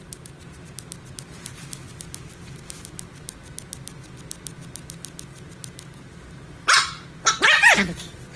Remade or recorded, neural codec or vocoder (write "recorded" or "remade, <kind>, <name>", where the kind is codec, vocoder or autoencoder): recorded